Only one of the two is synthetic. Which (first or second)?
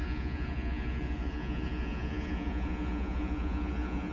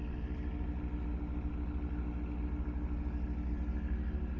first